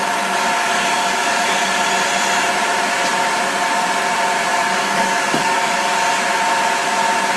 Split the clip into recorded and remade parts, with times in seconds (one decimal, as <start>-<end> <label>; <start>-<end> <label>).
0.0-0.6 recorded; 0.6-1.8 remade; 1.8-4.5 recorded; 4.5-6.0 remade; 6.0-7.4 recorded